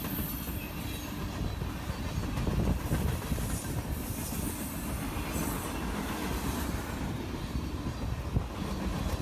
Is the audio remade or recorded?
recorded